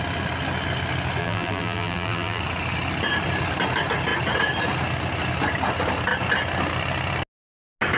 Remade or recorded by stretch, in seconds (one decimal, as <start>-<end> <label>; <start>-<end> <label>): 0.0-1.2 recorded; 1.2-2.4 remade; 2.4-8.0 recorded